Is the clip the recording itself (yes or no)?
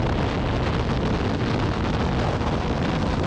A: yes